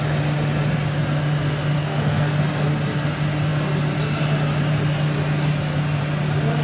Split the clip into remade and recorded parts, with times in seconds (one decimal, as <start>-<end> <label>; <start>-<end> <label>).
0.0-1.8 recorded; 1.8-2.4 remade; 2.4-6.6 recorded